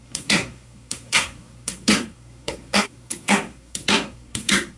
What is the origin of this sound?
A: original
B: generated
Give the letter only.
B